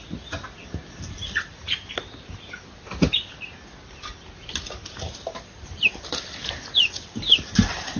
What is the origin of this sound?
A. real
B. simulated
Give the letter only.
A